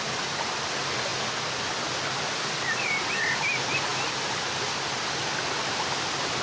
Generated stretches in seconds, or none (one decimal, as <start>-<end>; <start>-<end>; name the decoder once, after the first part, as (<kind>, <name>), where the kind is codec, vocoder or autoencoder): none